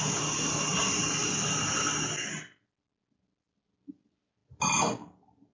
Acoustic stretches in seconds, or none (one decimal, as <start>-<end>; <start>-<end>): 0.0-5.5